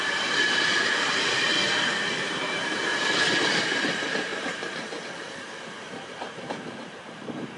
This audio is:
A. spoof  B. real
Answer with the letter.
A